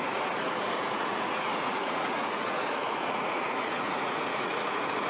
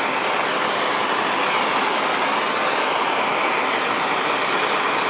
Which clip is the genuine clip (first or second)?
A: second